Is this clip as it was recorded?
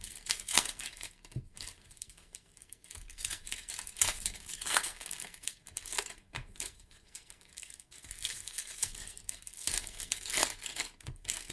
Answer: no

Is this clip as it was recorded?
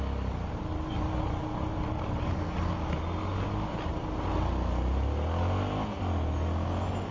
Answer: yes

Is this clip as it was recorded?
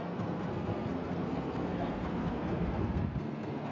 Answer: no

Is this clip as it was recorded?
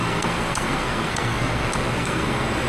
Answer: no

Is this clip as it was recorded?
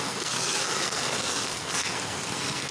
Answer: no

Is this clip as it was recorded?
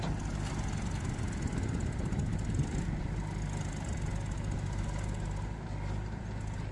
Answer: yes